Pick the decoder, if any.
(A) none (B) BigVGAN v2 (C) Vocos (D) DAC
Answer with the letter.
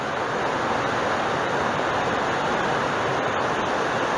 A